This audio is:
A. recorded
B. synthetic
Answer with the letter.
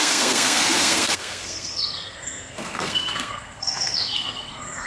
B